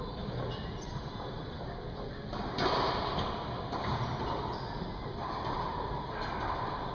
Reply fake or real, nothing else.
real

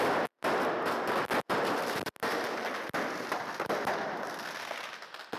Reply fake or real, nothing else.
real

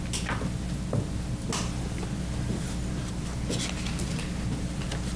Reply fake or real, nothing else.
real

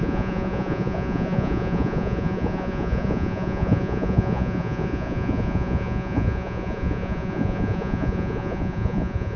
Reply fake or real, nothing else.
fake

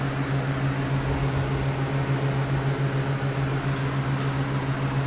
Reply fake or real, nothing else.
real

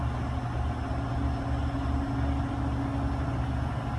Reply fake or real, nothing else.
real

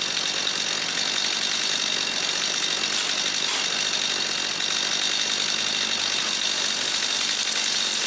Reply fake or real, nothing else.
real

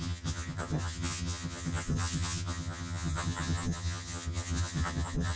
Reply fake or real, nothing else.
fake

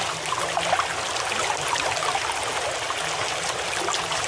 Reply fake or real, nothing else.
real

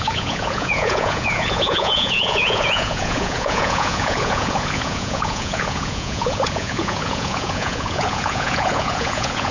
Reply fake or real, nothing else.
fake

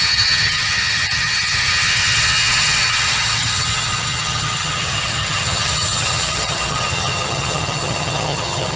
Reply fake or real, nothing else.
fake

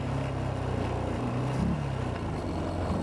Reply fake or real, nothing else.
real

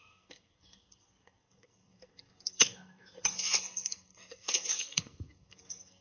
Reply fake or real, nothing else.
fake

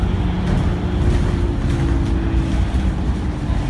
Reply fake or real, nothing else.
real